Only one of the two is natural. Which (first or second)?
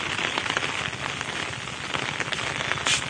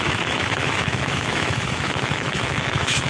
first